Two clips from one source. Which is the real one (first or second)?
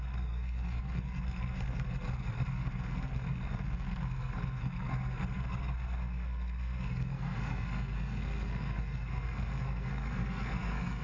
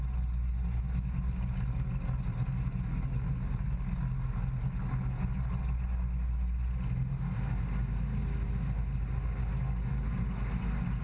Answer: second